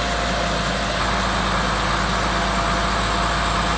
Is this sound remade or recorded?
recorded